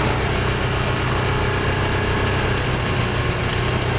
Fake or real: real